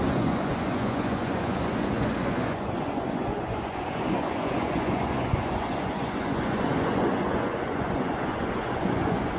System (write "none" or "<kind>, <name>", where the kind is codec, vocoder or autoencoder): vocoder, Vocos